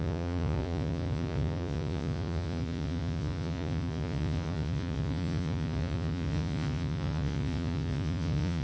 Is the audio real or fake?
fake